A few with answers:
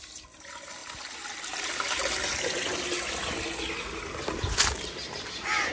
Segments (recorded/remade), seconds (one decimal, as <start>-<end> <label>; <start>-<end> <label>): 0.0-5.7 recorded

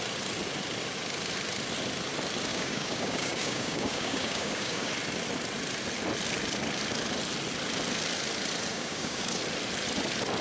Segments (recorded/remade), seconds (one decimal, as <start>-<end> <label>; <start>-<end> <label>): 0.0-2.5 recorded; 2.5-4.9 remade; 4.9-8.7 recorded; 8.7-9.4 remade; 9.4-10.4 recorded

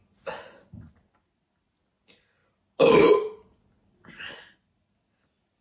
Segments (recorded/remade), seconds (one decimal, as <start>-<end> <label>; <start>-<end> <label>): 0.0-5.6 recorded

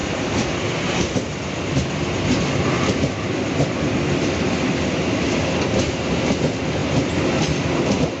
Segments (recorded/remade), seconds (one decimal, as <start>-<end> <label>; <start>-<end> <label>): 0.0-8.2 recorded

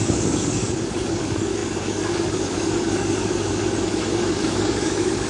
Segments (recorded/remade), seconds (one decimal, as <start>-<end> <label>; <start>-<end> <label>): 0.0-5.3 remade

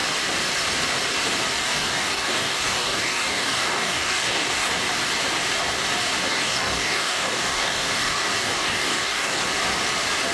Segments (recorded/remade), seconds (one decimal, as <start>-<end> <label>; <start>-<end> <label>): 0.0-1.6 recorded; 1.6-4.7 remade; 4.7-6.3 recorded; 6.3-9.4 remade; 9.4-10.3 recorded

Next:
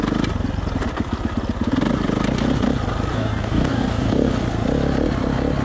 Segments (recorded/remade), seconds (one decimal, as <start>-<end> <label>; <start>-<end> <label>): 0.0-3.1 recorded; 3.1-4.3 remade; 4.3-5.6 recorded